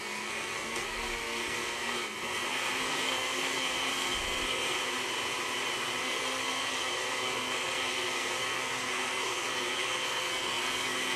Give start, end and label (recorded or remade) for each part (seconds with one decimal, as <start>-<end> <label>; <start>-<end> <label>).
0.0-4.8 remade; 4.8-6.0 recorded; 6.0-11.2 remade